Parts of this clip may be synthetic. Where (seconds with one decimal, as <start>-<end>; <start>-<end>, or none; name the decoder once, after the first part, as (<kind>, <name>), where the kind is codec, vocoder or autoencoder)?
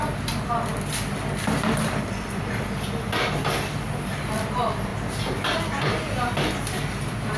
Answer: none